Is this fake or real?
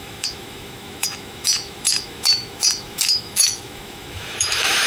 fake